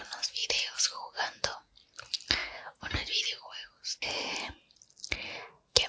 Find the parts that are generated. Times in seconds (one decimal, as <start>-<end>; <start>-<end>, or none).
0.4-1.7; 2.4-3.1